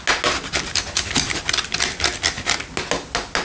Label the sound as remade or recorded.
recorded